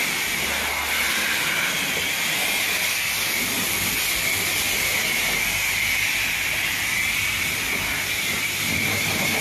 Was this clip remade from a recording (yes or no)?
no